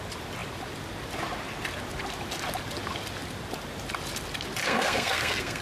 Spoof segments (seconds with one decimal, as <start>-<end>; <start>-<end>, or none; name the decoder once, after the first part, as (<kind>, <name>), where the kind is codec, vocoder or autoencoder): 4.6-5.6 (codec, SNAC)

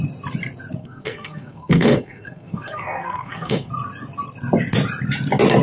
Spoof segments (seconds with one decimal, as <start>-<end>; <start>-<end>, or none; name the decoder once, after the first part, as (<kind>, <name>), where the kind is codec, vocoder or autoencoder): 0.8-3.7 (codec, SNAC)

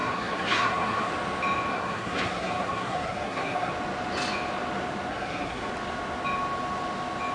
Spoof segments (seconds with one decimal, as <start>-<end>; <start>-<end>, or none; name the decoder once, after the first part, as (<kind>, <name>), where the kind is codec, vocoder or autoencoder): 0.0-1.1 (codec, SNAC); 1.7-3.7; 5.1-5.7

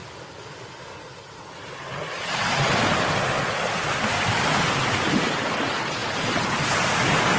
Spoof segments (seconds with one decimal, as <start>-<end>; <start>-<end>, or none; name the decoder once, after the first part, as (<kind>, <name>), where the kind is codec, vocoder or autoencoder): none

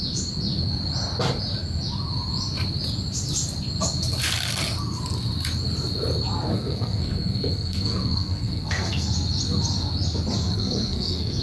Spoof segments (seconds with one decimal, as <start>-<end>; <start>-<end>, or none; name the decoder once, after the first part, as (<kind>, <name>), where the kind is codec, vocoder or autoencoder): 6.5-9.1 (codec, SNAC); 10.4-11.4

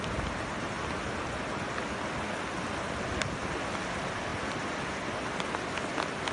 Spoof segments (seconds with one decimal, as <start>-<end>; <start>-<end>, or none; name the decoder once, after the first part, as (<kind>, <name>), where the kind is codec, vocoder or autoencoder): none